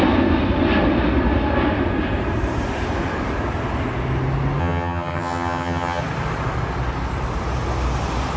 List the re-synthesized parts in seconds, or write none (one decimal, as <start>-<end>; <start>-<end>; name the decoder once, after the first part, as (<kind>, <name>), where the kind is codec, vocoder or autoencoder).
4.6-6.0 (vocoder, HiFi-GAN)

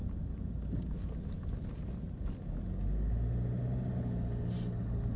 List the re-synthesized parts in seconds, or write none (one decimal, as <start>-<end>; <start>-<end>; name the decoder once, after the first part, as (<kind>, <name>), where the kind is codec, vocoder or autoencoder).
none

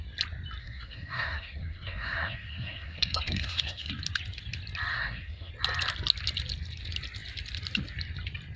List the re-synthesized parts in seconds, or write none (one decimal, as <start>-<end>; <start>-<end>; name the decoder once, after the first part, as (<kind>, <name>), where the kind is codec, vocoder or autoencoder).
0.6-3.9 (codec, SNAC); 4.9-5.5

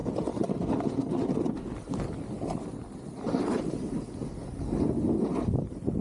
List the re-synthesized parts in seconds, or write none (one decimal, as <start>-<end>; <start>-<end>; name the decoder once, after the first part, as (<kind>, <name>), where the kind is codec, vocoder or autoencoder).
none

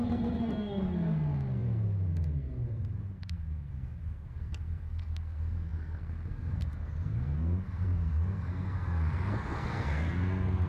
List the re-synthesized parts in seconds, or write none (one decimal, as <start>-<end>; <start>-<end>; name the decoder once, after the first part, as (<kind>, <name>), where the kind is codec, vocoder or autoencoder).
0.0-10.7 (codec, SNAC)

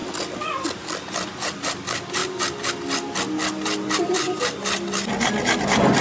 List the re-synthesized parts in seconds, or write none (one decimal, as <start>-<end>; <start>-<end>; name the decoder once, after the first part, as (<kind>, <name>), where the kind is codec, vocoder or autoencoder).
none

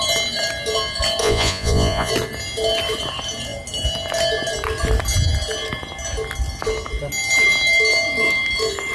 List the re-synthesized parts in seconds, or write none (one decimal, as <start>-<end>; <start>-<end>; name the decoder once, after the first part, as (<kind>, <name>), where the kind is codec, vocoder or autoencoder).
1.2-2.1 (vocoder, Vocos)